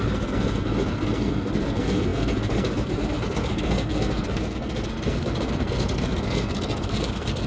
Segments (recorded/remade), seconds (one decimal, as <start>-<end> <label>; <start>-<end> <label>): 0.0-7.5 remade